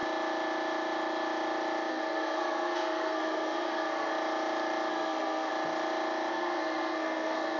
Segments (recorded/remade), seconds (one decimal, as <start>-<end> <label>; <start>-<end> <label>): 0.0-1.9 recorded; 1.9-4.1 remade; 4.1-4.9 recorded; 4.9-5.5 remade; 5.5-6.3 recorded; 6.3-7.6 remade